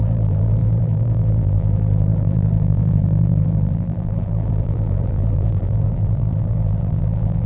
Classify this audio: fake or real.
fake